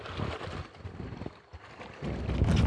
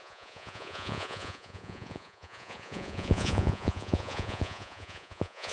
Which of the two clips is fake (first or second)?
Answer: second